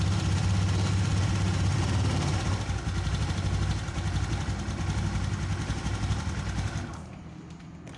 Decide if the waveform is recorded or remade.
recorded